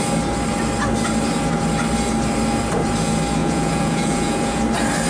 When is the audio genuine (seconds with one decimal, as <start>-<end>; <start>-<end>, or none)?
0.0-3.4; 4.6-5.1